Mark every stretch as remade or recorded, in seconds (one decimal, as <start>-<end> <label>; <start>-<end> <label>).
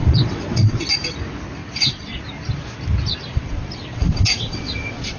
0.0-0.8 remade; 0.8-1.6 recorded; 1.6-2.2 remade; 2.2-3.3 recorded; 3.3-5.2 remade